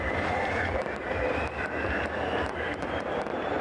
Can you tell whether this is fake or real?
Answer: fake